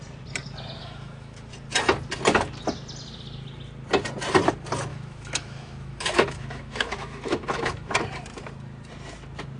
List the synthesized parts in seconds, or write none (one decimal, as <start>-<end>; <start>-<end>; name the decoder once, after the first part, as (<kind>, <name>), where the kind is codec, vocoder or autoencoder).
0.8-1.5 (autoencoder, DAC-VAE); 4.9-7.9